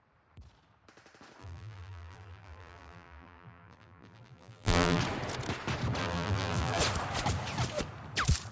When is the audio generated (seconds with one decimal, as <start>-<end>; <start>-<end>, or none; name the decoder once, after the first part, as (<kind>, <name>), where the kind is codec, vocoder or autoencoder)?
1.4-5.0 (vocoder, BigVGAN v2); 6.0-6.8